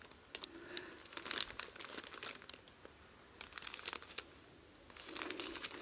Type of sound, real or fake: real